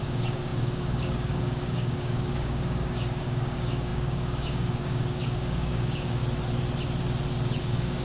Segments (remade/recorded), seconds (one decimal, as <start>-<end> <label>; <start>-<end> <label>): 0.0-6.2 remade; 6.2-7.6 recorded; 7.6-8.0 remade